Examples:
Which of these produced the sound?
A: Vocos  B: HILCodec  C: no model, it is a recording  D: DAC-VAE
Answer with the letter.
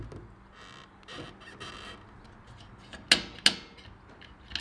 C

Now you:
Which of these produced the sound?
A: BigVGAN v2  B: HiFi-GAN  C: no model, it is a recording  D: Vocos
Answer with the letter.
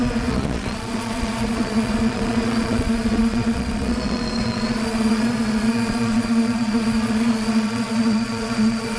D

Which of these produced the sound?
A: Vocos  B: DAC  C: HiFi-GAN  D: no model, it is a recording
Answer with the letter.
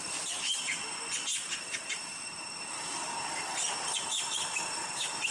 D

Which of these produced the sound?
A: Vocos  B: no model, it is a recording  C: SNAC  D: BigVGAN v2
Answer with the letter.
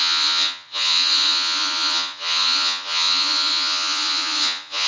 A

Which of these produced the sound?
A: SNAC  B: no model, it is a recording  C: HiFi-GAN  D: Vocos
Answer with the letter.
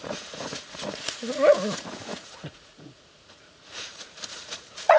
D